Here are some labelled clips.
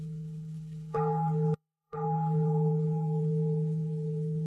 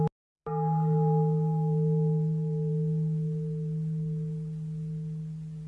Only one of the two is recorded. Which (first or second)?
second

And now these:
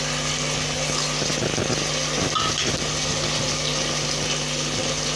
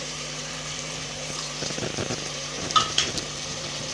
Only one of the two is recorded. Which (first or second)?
first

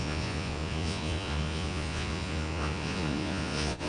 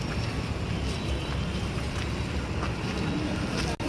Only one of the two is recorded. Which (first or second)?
second